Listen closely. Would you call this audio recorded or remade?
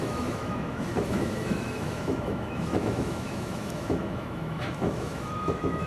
remade